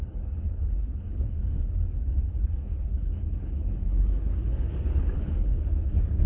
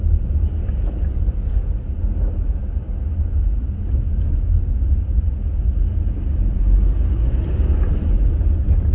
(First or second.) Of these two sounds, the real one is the second